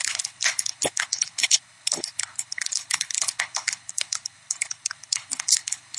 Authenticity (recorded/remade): remade